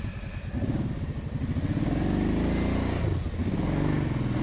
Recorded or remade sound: recorded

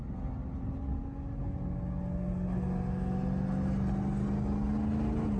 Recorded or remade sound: recorded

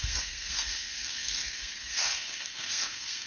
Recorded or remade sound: remade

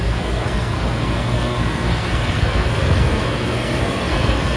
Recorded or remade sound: remade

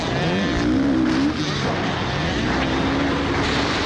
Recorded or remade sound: recorded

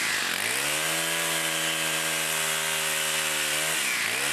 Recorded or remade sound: recorded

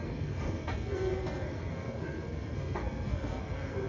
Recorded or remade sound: remade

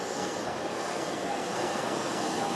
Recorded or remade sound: remade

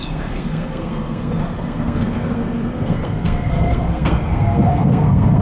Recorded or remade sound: remade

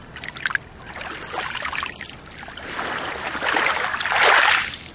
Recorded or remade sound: recorded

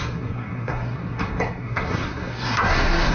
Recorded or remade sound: remade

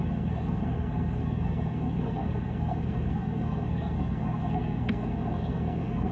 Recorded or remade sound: remade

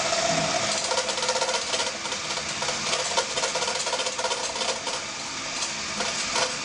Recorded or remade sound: recorded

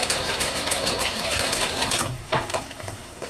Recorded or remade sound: remade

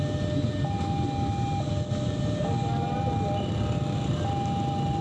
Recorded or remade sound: recorded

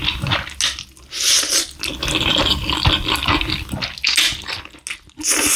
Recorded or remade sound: recorded